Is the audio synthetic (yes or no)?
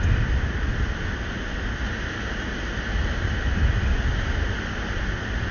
no